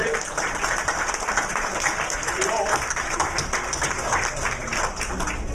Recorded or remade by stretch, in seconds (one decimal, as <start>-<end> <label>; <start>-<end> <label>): 0.0-2.6 remade; 2.6-5.5 recorded